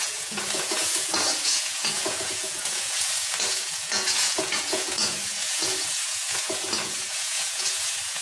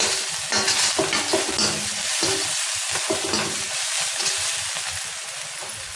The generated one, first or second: first